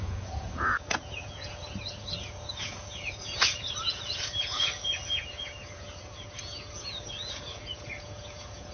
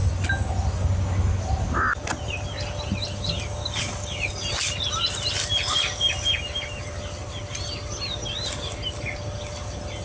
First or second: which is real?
second